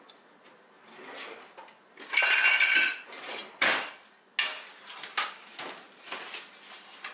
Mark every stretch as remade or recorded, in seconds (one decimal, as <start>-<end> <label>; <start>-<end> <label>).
0.0-7.1 recorded